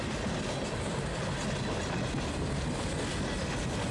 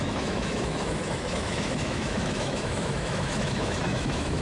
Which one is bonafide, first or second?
first